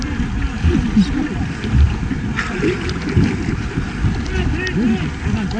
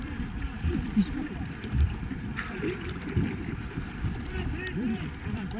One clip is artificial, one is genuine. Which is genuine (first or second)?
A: first